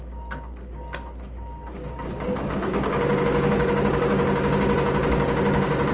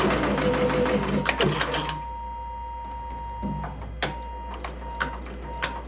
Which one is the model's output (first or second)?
first